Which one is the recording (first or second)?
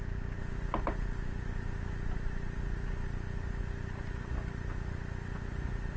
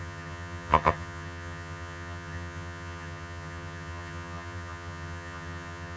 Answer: first